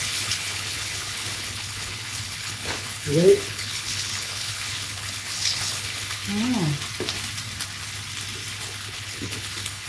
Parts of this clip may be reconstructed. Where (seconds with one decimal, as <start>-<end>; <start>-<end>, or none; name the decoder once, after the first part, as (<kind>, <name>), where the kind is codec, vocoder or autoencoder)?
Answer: 0.0-6.3 (codec, HILCodec); 8.8-9.9